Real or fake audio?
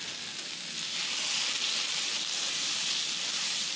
real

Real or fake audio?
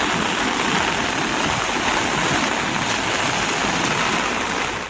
real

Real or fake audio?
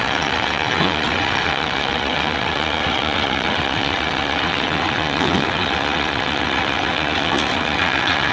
fake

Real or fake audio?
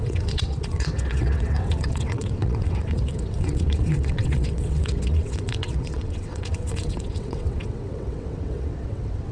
fake